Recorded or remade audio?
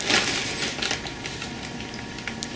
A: recorded